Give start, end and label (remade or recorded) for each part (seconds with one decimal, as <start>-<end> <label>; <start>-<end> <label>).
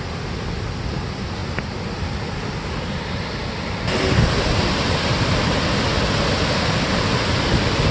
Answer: 0.0-7.9 recorded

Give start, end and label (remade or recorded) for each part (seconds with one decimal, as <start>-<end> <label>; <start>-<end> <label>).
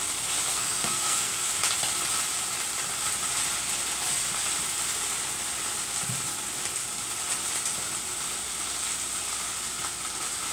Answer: 0.0-0.5 recorded; 0.5-1.5 remade; 1.5-10.5 recorded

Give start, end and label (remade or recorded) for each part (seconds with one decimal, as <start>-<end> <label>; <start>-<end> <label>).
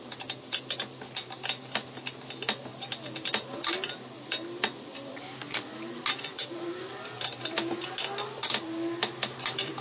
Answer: 0.0-9.8 recorded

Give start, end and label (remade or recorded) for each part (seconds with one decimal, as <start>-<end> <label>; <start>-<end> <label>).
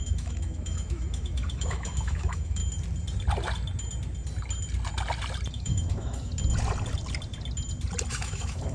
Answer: 0.0-2.6 remade; 2.6-5.5 recorded; 5.5-6.3 remade; 6.3-8.1 recorded; 8.1-8.7 remade